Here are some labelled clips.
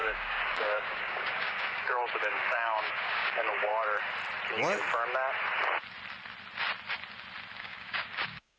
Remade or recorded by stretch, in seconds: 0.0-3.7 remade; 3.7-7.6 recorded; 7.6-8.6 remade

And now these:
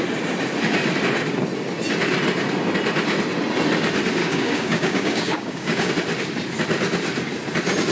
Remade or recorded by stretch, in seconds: 0.0-4.2 recorded; 4.2-5.9 remade; 5.9-7.9 recorded

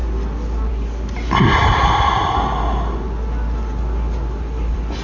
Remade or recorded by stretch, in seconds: 0.0-5.0 recorded

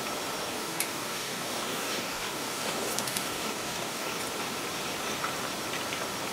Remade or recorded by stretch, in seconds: 0.0-0.4 recorded; 0.4-4.2 remade; 4.2-6.3 recorded

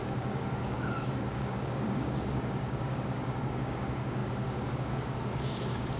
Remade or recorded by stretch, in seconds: 0.0-6.0 remade

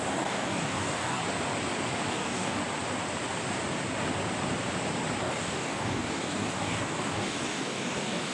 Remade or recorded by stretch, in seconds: 0.0-1.2 remade; 1.2-2.1 recorded; 2.1-2.6 remade; 2.6-5.2 recorded; 5.2-8.3 remade